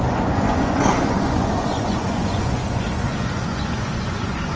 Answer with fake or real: fake